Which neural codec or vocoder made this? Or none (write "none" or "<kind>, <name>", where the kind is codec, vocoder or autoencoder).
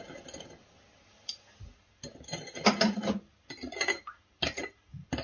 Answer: none